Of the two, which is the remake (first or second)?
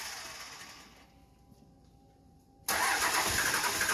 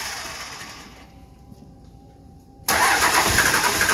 second